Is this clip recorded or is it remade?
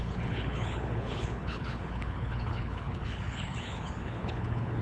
remade